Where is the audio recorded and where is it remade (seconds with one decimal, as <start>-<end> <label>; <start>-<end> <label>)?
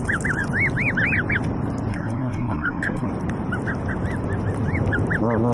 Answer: 0.0-1.9 recorded; 1.9-3.1 remade; 3.1-5.5 recorded